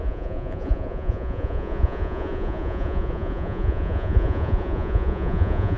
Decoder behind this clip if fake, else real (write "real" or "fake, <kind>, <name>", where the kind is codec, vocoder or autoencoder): fake, vocoder, Vocos